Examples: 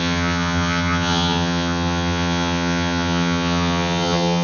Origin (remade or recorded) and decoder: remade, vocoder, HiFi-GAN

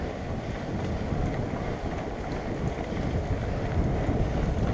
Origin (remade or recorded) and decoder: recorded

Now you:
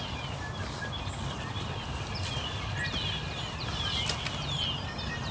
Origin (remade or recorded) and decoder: recorded